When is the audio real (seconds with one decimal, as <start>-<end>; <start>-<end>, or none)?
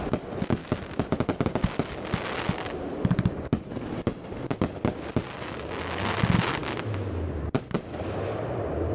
0.0-8.9